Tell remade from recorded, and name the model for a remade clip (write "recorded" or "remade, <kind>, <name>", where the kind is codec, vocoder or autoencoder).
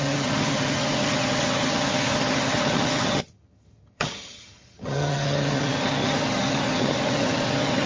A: remade, vocoder, HiFi-GAN